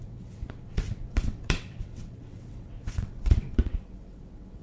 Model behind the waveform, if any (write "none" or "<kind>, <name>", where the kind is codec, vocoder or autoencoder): vocoder, WaveNeXt